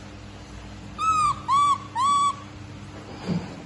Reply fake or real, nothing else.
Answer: real